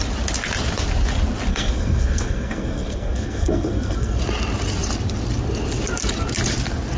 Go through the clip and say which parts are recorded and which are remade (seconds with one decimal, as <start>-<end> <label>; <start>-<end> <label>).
0.0-1.5 recorded; 1.5-4.2 remade; 4.2-7.0 recorded